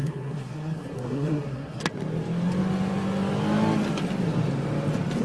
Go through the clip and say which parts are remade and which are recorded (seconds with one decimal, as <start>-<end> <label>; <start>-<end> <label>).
0.0-1.8 remade; 1.8-5.2 recorded